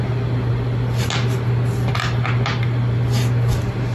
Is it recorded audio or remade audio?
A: recorded